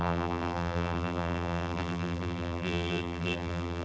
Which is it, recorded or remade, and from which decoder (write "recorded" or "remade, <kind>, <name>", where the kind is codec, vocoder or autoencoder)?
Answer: remade, vocoder, BigVGAN v2